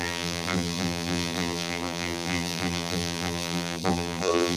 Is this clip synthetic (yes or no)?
yes